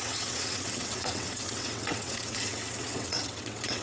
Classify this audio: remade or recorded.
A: remade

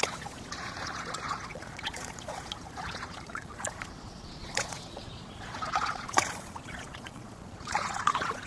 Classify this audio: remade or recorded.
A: remade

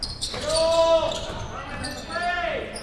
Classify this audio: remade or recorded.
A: recorded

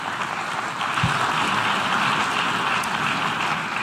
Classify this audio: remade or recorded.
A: recorded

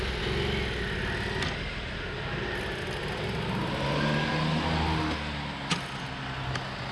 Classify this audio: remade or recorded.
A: recorded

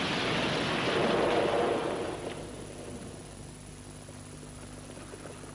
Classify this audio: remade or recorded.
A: recorded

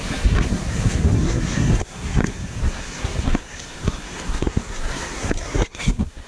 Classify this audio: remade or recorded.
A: remade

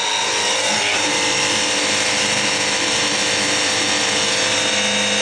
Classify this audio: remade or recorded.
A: recorded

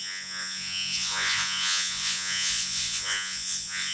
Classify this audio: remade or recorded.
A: remade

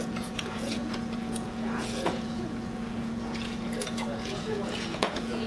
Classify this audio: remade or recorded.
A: remade